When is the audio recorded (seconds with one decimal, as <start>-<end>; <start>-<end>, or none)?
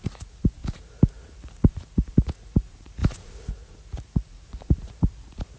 0.6-1.3